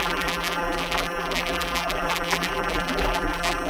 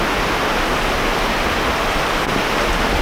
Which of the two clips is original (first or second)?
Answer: second